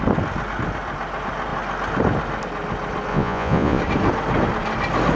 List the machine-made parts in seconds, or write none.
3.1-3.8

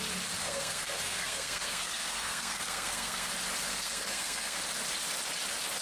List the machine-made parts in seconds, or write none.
0.4-3.3; 3.7-4.6

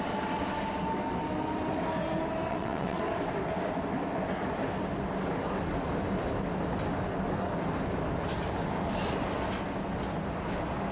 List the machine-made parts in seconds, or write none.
2.5-3.0

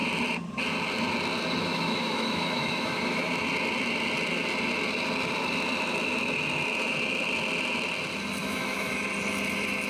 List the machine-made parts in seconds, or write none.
1.6-3.3; 8.4-9.0

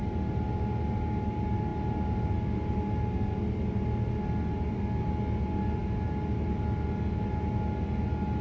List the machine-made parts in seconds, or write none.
none

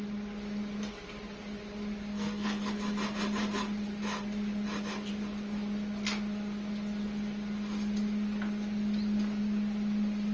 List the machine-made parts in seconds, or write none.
2.1-2.7

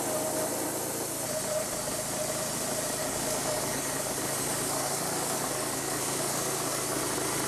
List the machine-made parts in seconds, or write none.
3.0-7.0

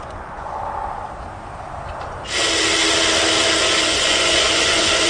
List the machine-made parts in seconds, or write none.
0.0-0.6; 3.7-5.1